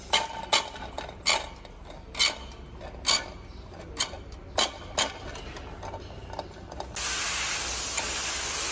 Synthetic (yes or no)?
no